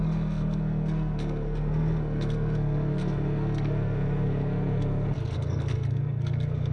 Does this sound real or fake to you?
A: fake